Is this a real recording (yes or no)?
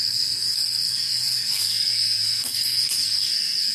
no